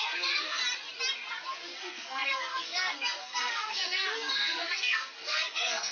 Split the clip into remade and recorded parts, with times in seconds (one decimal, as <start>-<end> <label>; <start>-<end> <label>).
0.0-0.6 remade; 0.6-1.8 recorded; 1.8-5.9 remade